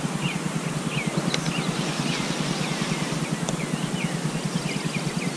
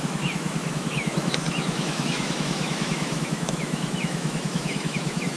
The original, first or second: first